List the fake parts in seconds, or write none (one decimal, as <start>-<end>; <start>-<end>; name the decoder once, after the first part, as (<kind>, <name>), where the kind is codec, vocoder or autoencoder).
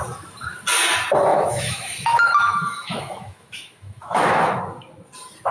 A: 1.3-4.6 (autoencoder, DAC-VAE)